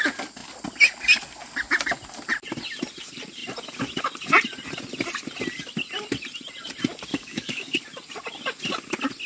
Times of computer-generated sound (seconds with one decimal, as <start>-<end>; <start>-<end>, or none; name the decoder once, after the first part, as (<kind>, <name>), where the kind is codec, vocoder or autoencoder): 7.1-7.8 (codec, DAC)